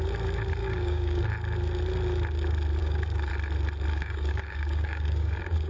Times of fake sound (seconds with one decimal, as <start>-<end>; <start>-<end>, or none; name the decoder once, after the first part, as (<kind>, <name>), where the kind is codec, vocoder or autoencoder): 0.6-1.2 (codec, DAC); 2.8-3.3; 3.9-5.7